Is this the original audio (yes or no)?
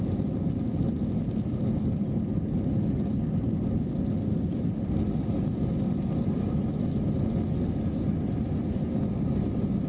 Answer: yes